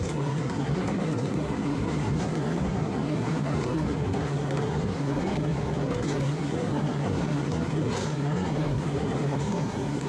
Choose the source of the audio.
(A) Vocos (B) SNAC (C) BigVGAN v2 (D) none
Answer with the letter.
B